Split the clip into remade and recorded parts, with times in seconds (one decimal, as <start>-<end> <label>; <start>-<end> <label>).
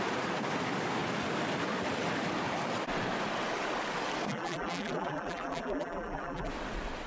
0.0-4.3 recorded; 4.3-6.5 remade; 6.5-7.1 recorded